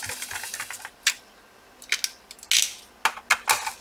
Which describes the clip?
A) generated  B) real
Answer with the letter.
B